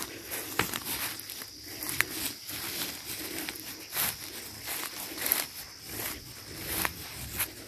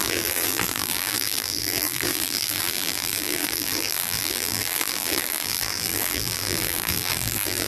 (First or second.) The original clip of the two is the first